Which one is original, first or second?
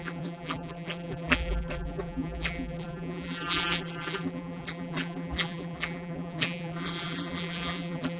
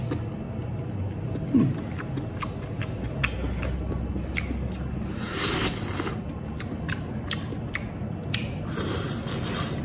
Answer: second